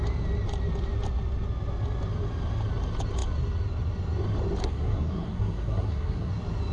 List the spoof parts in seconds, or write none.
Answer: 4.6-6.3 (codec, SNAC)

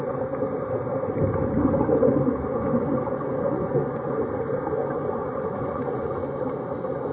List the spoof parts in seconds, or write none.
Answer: 2.5-4.2 (vocoder, Vocos); 4.8-6.1

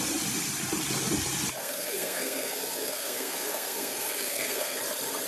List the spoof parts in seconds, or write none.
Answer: 1.6-4.8 (codec, SNAC)

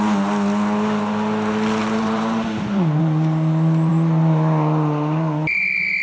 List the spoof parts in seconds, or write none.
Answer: 1.8-3.0 (vocoder, BigVGAN v2)